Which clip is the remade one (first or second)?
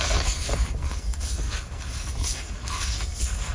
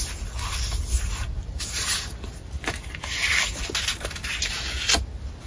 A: first